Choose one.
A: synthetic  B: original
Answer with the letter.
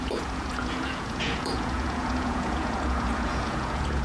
A